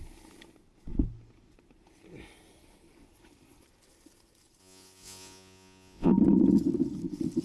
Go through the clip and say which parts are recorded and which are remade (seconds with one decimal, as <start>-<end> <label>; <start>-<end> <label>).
0.0-4.6 recorded; 4.6-6.1 remade; 6.1-7.4 recorded